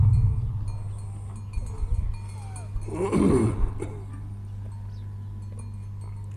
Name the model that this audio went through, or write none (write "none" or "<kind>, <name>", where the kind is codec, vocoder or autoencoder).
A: none